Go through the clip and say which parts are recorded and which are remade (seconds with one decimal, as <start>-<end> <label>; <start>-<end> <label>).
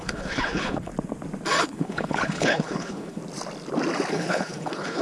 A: 0.0-0.9 remade; 0.9-1.6 recorded; 1.6-3.2 remade; 3.2-4.1 recorded; 4.1-5.0 remade